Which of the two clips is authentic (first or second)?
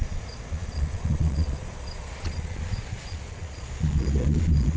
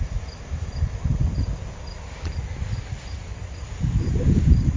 second